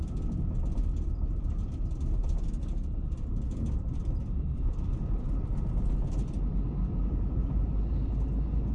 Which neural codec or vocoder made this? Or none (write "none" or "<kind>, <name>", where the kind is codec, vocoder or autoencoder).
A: none